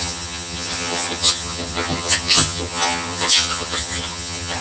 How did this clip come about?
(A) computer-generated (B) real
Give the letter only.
A